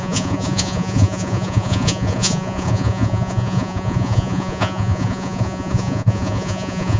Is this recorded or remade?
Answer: remade